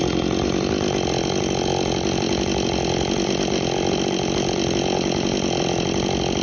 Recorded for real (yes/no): yes